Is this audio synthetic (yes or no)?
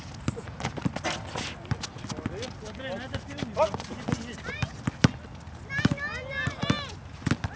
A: no